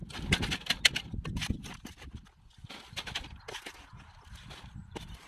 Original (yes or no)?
yes